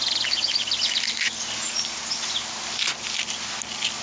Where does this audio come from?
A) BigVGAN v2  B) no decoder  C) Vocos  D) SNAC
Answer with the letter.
B